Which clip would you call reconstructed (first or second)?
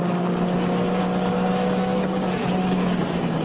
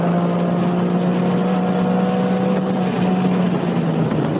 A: first